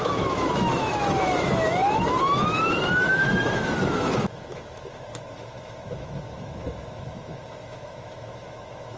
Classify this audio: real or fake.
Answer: fake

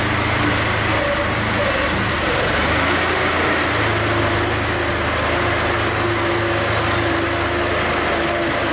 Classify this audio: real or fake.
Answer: real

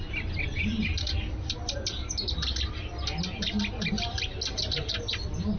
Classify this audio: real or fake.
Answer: real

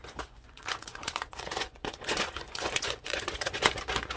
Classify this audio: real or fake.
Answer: fake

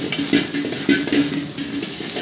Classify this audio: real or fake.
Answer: real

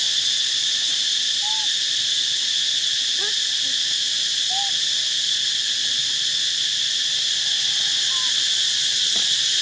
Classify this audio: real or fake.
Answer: real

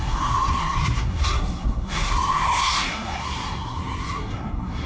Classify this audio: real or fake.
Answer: fake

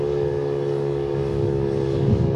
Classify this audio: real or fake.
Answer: fake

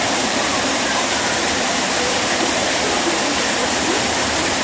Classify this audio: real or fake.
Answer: fake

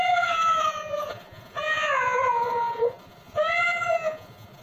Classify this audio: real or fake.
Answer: fake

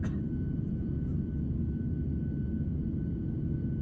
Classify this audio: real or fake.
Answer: real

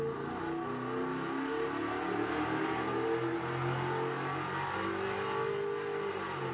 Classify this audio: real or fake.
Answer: real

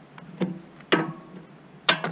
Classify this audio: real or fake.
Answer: real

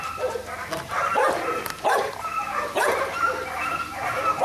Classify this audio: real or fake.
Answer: real